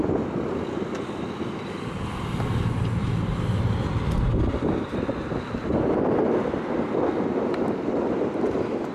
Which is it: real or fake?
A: real